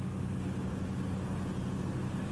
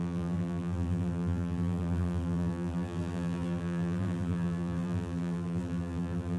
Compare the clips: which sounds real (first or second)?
first